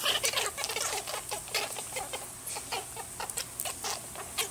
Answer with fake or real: real